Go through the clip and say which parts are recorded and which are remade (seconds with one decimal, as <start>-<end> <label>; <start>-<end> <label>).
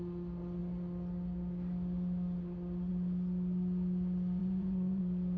0.0-4.4 recorded; 4.4-5.0 remade; 5.0-5.4 recorded